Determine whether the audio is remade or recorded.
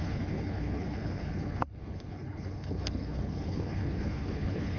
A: remade